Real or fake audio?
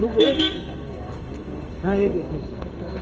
fake